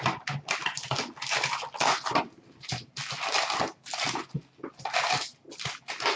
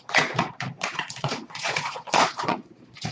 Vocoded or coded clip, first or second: second